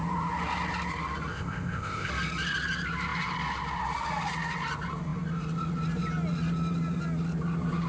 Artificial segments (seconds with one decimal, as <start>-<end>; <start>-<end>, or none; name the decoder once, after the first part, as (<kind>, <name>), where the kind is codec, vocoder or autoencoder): 1.3-2.1 (codec, ZipCodec)